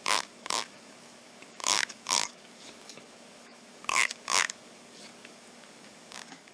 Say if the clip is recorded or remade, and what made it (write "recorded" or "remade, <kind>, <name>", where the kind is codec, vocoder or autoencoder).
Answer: remade, codec, DAC